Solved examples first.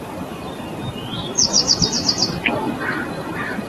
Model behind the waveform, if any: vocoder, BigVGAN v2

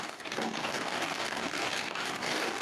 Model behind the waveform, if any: codec, DAC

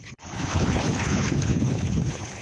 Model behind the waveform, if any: codec, HILCodec